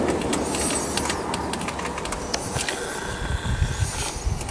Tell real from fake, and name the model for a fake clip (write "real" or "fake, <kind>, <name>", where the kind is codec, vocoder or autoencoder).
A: real